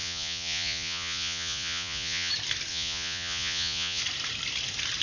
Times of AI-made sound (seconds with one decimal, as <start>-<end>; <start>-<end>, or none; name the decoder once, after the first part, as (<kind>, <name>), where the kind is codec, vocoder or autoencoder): 0.0-2.3 (vocoder, Vocos); 2.7-4.0